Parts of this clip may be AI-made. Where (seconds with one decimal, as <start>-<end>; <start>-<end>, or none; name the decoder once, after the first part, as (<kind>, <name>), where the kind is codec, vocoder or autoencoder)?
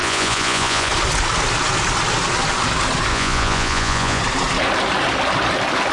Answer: 0.0-0.9 (vocoder, Vocos); 3.1-4.2